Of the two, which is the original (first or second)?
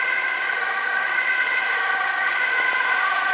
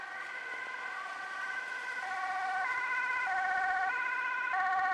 second